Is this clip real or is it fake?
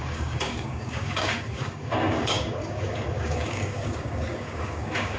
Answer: fake